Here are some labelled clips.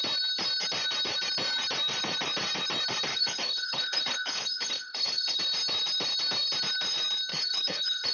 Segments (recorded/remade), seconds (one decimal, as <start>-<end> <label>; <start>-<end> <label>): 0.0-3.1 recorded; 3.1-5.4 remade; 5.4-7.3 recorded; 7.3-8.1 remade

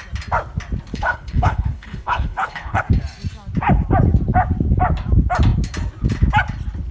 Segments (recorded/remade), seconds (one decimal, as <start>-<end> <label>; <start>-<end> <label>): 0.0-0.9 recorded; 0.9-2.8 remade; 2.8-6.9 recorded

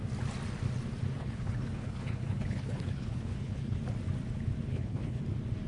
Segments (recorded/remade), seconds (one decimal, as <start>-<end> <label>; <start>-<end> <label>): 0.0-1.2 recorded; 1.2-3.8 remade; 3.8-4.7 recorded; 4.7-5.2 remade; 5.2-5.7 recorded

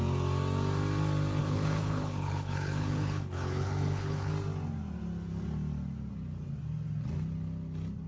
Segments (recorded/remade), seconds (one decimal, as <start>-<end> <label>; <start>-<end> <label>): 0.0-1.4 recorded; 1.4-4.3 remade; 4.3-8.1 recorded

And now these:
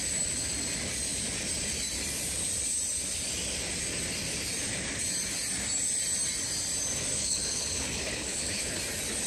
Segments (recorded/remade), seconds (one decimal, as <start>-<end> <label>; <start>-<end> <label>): 0.0-7.1 recorded; 7.1-8.8 remade; 8.8-9.3 recorded

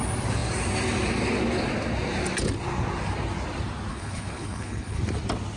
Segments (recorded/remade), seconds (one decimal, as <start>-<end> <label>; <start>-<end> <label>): 0.0-3.9 recorded; 3.9-5.0 remade; 5.0-5.6 recorded

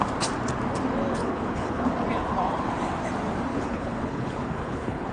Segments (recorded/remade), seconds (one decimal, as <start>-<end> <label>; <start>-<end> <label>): 0.0-1.2 recorded; 1.2-1.9 remade; 1.9-3.5 recorded; 3.5-5.1 remade

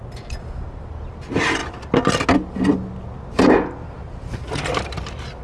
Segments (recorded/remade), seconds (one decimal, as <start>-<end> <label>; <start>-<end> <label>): 0.0-5.4 recorded